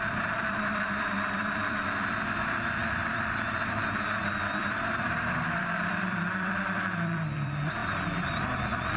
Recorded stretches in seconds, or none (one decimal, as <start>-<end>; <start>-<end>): none